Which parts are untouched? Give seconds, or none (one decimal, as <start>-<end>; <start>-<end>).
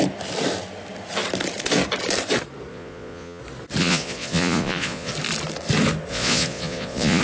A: 0.0-2.7; 3.4-3.8; 5.1-6.1